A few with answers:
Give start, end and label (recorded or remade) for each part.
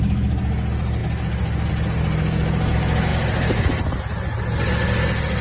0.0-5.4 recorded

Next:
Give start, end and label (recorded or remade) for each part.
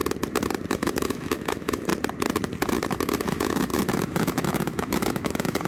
0.0-0.7 recorded; 0.7-1.9 remade; 1.9-2.7 recorded; 2.7-5.7 remade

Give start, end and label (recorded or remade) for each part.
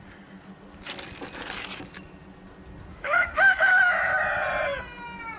0.0-2.9 recorded; 2.9-3.8 remade; 3.8-5.4 recorded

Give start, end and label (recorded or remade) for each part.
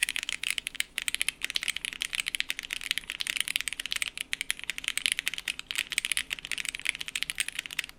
0.0-1.0 remade; 1.0-8.0 recorded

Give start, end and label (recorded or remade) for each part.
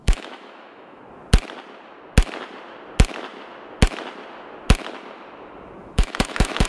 0.0-1.0 remade; 1.0-5.8 recorded; 5.8-6.7 remade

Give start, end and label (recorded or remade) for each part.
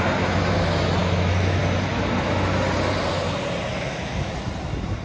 0.0-1.0 recorded; 1.0-1.6 remade; 1.6-3.7 recorded; 3.7-4.3 remade; 4.3-5.0 recorded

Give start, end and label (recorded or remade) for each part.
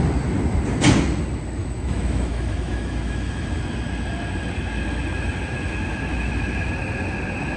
0.0-1.6 recorded; 1.6-3.6 remade; 3.6-6.1 recorded; 6.1-6.7 remade; 6.7-7.6 recorded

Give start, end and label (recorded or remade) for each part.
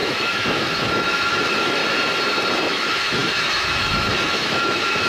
0.0-1.8 remade; 1.8-2.7 recorded; 2.7-5.1 remade